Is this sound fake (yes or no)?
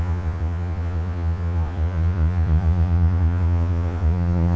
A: yes